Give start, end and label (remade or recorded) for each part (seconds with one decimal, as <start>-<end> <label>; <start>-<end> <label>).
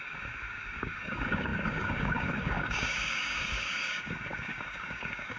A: 0.0-5.4 remade